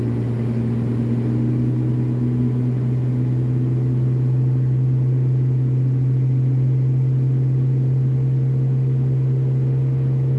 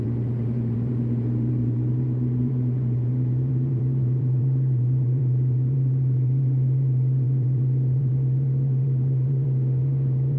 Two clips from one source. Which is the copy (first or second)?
second